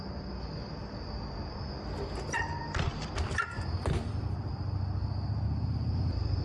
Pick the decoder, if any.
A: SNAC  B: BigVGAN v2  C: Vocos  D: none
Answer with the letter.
D